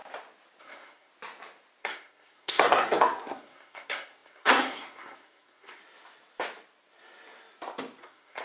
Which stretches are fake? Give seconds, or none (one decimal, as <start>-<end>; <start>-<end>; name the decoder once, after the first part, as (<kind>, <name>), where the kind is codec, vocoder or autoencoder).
0.6-1.1 (codec, SNAC); 1.8-5.8; 8.0-8.4